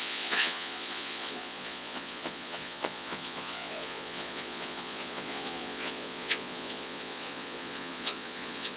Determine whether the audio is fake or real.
fake